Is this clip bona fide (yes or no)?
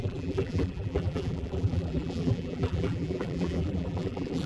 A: no